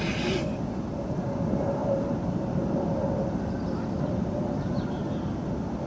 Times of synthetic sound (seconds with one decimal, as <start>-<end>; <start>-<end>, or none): 1.8-5.0